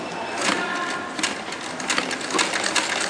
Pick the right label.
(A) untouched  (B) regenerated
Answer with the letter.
A